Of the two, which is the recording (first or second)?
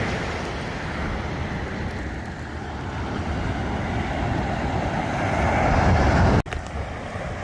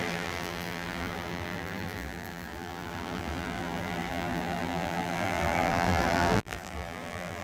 first